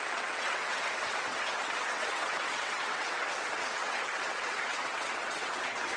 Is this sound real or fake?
fake